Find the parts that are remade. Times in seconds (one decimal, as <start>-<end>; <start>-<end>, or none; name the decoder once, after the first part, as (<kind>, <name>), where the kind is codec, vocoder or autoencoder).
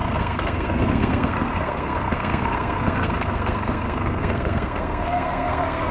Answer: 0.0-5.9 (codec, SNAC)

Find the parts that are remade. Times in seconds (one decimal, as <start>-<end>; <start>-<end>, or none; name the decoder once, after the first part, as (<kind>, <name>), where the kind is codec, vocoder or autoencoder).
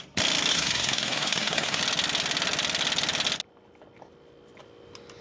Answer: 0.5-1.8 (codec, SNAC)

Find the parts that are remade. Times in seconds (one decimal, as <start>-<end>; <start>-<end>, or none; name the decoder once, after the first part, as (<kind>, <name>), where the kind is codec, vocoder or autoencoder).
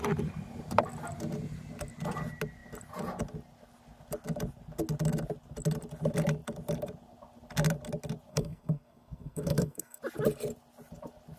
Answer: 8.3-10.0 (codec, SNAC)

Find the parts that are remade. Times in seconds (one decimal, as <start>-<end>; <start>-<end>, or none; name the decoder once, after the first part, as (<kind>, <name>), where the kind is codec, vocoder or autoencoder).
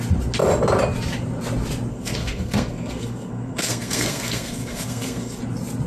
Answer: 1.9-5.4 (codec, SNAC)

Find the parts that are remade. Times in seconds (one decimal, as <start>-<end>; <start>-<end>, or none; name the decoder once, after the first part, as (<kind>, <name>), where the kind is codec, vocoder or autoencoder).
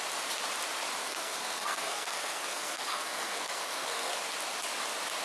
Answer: 1.0-4.1 (codec, SNAC)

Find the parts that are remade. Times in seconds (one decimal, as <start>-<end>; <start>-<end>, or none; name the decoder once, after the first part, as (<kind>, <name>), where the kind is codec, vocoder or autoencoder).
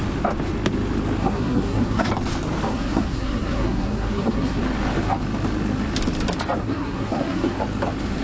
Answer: 1.2-2.1 (codec, SNAC); 2.7-4.6; 6.6-7.6